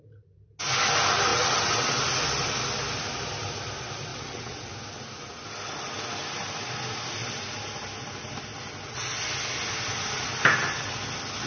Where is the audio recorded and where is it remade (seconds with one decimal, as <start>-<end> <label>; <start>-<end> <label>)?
0.0-1.3 recorded; 1.3-2.0 remade; 2.0-4.1 recorded; 4.1-4.7 remade; 4.7-11.5 recorded